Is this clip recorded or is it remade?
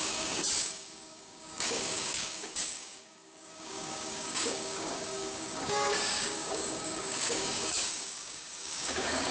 remade